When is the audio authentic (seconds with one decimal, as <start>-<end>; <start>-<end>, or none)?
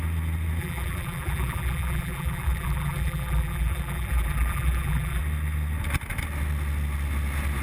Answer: 0.0-0.6; 5.2-7.6